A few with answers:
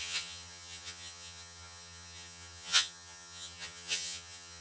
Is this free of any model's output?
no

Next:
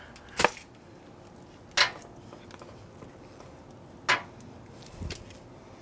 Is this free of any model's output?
yes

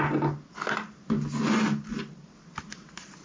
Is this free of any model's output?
yes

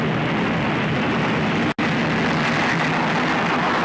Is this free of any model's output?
yes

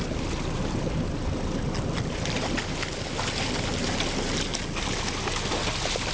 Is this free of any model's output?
yes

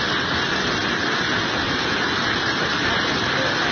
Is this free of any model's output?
yes